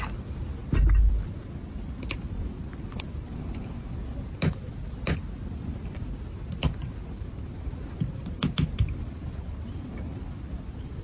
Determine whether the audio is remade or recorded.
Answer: recorded